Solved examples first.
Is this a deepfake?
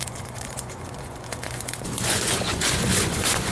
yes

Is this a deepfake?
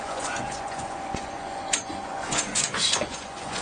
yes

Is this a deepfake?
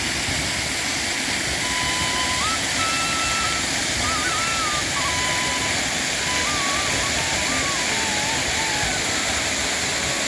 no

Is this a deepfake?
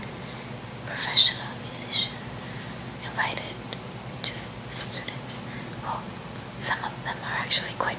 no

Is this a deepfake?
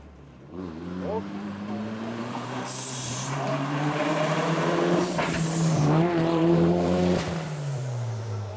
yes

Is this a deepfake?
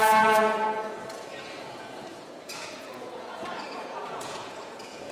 yes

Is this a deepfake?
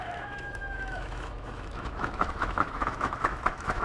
yes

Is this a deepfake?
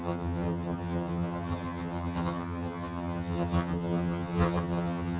yes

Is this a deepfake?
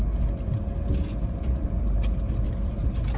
no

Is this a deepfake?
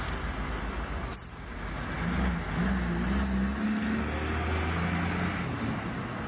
no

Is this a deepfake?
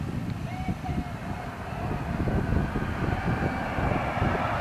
no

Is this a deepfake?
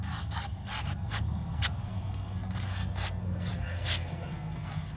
yes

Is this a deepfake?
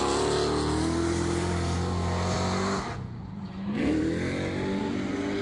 no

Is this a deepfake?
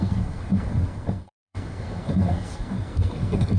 yes